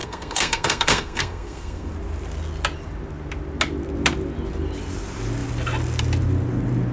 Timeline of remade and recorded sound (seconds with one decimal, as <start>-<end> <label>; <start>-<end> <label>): 0.0-1.9 remade; 1.9-6.9 recorded